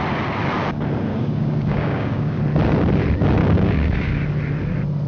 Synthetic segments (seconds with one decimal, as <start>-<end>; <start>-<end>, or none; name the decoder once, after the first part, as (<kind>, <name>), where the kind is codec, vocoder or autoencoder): 1.1-2.4 (codec, DAC); 3.4-4.1